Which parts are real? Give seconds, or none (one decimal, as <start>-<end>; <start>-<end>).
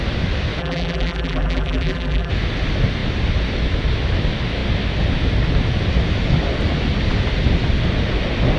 0.0-0.6; 2.3-8.6